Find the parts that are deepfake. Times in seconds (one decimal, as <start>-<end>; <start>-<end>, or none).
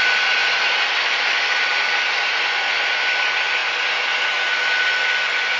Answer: none